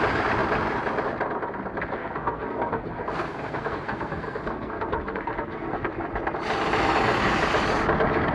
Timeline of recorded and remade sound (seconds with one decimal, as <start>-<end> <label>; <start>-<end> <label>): 0.0-2.0 recorded; 2.0-5.9 remade; 5.9-8.3 recorded

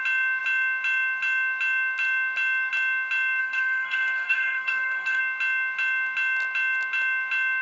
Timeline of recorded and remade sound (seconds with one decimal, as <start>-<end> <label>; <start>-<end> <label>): 0.0-3.4 recorded; 3.4-5.2 remade; 5.2-7.6 recorded

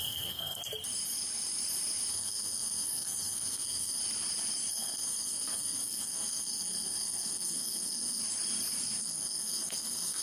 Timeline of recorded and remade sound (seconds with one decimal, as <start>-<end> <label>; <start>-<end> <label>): 0.0-0.6 remade; 0.6-2.1 recorded; 2.1-4.0 remade; 4.0-4.7 recorded; 4.7-8.2 remade; 8.2-9.0 recorded; 9.0-10.2 remade

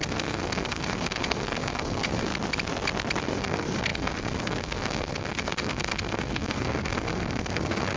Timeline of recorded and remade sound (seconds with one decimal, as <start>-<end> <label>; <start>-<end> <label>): 0.0-2.3 remade; 2.3-3.2 recorded; 3.2-8.0 remade

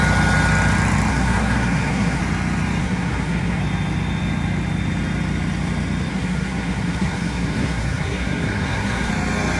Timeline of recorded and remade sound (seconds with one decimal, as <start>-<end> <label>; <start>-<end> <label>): 0.0-1.1 recorded; 1.1-2.2 remade; 2.2-2.8 recorded; 2.8-3.6 remade; 3.6-6.1 recorded; 6.1-9.1 remade; 9.1-9.6 recorded

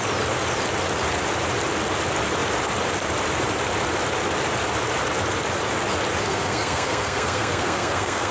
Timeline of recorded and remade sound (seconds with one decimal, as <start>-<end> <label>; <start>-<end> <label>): 0.0-6.2 recorded; 6.2-8.3 remade

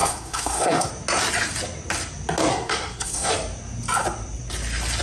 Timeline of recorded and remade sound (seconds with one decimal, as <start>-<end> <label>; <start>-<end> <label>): 0.0-0.9 remade; 0.9-2.5 recorded; 2.5-3.3 remade; 3.3-5.0 recorded

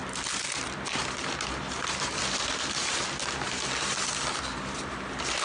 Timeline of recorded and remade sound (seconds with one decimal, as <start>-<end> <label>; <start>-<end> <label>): 0.0-5.4 recorded